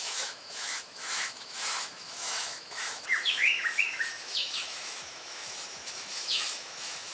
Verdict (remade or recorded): remade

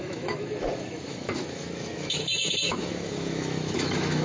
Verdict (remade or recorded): remade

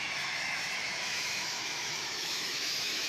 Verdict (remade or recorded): remade